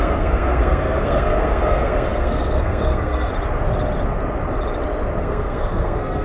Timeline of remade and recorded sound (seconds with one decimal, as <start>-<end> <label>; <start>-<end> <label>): 0.0-3.3 remade; 3.3-5.2 recorded; 5.2-6.2 remade

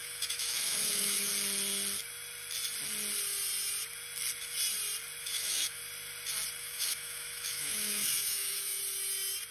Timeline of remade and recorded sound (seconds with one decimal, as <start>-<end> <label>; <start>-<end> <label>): 0.0-1.3 remade; 1.3-5.2 recorded; 5.2-5.8 remade; 5.8-6.6 recorded; 6.6-8.8 remade; 8.8-9.5 recorded